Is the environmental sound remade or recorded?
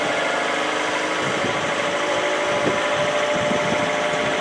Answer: recorded